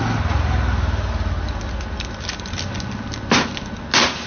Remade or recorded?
recorded